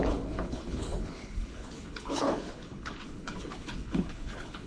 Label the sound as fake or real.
fake